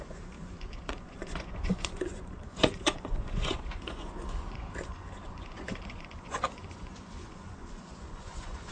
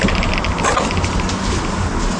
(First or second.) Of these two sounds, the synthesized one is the first